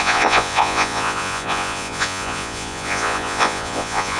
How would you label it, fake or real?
fake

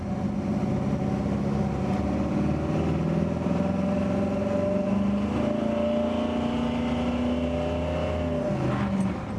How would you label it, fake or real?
real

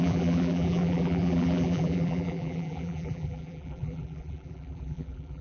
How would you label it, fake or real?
fake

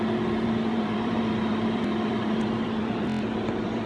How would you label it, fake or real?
fake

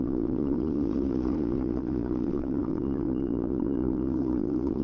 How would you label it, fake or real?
fake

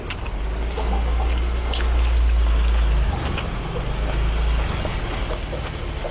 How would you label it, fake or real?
real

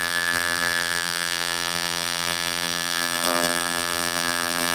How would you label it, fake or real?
fake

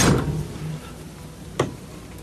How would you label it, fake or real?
real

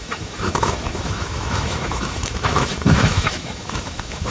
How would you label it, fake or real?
fake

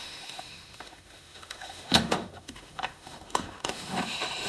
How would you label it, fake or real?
fake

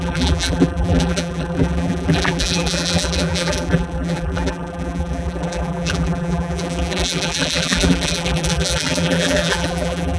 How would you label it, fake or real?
fake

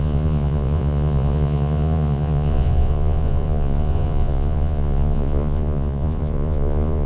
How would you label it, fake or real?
fake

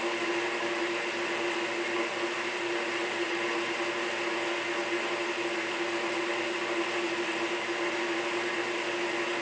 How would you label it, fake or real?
real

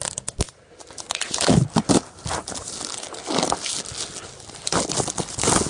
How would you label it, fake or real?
real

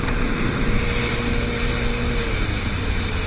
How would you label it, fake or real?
real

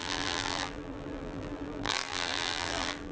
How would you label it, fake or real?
fake